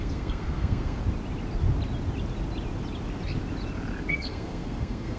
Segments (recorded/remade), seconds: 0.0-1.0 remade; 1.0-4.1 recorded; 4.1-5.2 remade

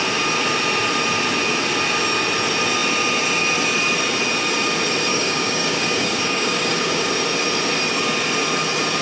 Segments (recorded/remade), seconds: 0.0-5.1 recorded; 5.1-7.1 remade; 7.1-9.0 recorded

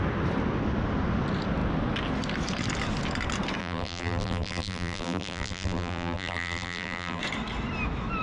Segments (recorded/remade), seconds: 0.0-3.6 recorded; 3.6-7.2 remade; 7.2-8.2 recorded